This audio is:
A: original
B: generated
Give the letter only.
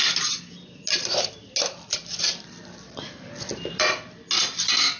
A